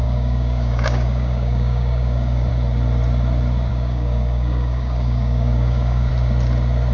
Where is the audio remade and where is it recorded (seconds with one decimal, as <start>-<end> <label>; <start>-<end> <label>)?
0.0-2.5 remade; 2.5-3.7 recorded; 3.7-6.1 remade; 6.1-6.9 recorded

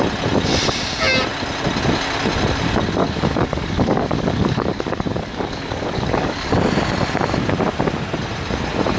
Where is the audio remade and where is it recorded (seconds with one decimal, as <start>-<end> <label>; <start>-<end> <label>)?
0.0-3.0 recorded; 3.0-6.5 remade; 6.5-9.0 recorded

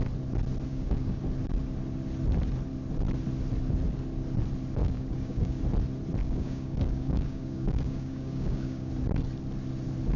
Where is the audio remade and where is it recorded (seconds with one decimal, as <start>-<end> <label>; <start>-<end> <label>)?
0.0-0.7 recorded; 0.7-1.2 remade; 1.2-4.8 recorded; 4.8-5.6 remade; 5.6-6.2 recorded; 6.2-8.9 remade; 8.9-10.2 recorded

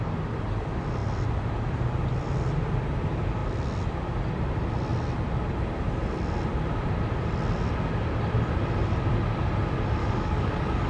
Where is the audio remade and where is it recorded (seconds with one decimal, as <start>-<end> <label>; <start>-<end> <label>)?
0.0-10.0 recorded; 10.0-10.9 remade